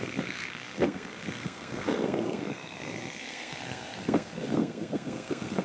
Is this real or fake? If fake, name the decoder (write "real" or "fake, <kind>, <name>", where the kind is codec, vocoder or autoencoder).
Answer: fake, codec, SNAC